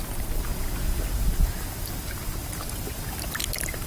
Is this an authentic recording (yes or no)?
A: yes